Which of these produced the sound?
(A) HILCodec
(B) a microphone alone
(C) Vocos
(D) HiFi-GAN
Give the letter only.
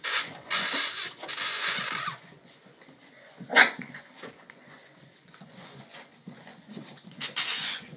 C